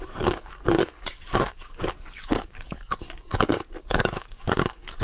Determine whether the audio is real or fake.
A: fake